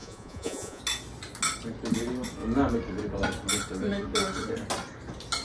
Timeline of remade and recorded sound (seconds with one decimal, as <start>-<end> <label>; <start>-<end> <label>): 0.0-0.8 remade; 0.8-5.4 recorded